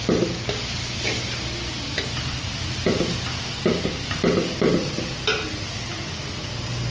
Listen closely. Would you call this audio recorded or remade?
recorded